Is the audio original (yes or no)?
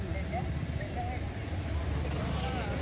yes